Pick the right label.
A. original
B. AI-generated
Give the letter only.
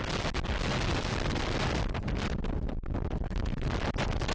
A